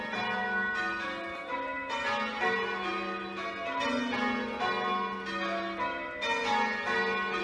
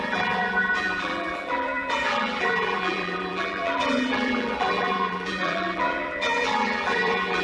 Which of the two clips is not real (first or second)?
second